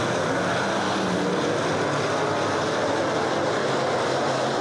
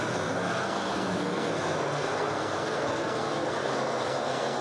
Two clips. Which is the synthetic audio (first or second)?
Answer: second